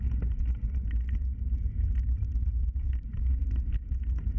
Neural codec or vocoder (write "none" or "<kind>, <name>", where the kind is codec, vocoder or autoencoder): none